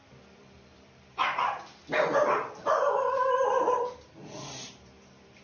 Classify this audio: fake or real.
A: fake